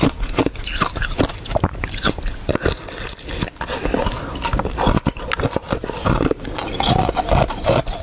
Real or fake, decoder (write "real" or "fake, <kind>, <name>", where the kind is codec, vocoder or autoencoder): real